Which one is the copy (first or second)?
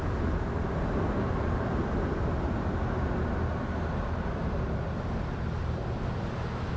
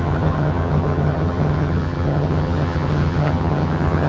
second